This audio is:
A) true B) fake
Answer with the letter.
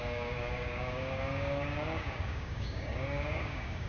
B